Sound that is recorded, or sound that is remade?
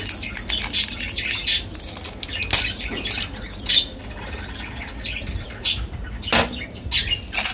recorded